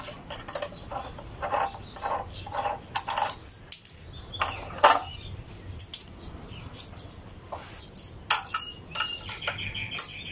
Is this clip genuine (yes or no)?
yes